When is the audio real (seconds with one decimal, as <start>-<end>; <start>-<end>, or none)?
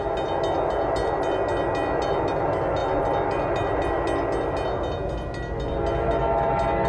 0.0-6.9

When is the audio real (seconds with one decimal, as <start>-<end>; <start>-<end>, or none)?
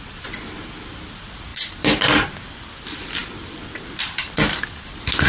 none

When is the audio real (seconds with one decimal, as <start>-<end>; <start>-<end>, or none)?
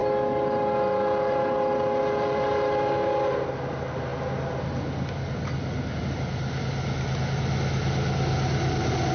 0.0-9.1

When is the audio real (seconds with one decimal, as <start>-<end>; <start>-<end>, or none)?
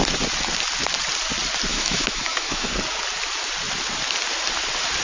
0.0-1.7; 2.7-5.0